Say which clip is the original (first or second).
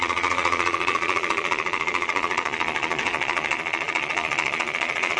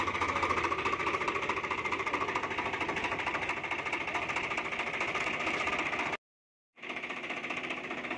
second